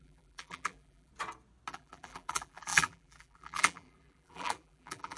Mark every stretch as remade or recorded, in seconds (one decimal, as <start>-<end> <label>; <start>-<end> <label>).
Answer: 0.0-1.1 remade; 1.1-1.7 recorded; 1.7-5.2 remade